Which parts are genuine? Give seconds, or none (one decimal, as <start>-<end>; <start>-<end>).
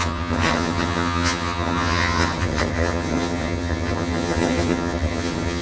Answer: none